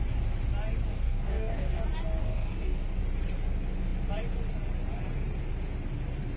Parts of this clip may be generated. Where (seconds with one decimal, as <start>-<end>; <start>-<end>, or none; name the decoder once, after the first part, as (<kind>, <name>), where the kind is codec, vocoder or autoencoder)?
0.9-1.8 (codec, DAC); 2.2-3.0